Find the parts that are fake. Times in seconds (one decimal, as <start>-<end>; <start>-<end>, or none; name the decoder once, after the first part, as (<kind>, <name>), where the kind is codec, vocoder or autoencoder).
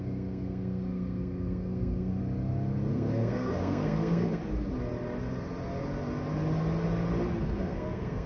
0.0-2.2 (codec, SNAC); 2.9-4.4; 7.4-8.3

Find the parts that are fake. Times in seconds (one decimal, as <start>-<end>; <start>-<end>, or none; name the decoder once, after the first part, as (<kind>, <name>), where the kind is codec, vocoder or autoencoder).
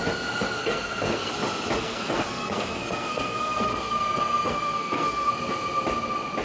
0.6-1.3 (codec, SNAC); 1.8-5.3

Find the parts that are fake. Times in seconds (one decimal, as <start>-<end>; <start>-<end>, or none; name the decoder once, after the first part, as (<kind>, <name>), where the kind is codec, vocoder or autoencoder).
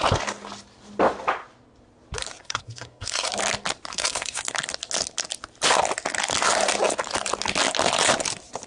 2.4-3.3 (codec, SNAC); 3.9-4.4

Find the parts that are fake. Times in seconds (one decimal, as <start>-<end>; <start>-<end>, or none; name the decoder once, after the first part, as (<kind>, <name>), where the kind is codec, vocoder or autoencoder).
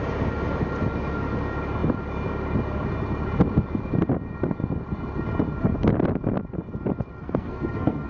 7.2-8.1 (codec, SNAC)